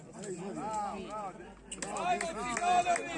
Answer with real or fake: real